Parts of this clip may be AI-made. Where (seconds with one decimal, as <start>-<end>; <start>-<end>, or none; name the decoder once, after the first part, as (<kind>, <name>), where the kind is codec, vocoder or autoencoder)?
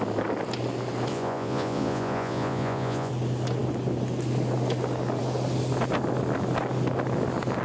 1.1-3.1 (vocoder, Vocos)